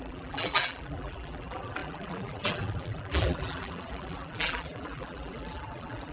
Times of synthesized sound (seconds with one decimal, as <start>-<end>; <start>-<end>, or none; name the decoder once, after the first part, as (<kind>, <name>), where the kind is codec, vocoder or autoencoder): 0.0-6.1 (vocoder, BigVGAN v2)